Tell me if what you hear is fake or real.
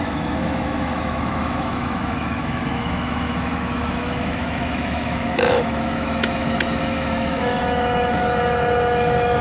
fake